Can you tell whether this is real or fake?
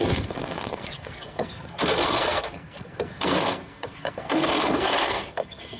fake